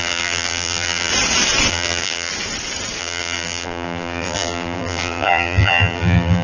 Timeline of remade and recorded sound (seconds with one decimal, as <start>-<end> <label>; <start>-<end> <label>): 0.0-1.1 remade; 1.1-1.7 recorded; 1.7-2.3 remade; 2.3-3.0 recorded; 3.0-6.4 remade